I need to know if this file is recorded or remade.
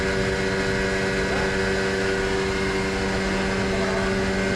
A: recorded